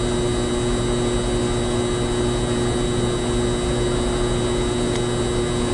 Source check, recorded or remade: recorded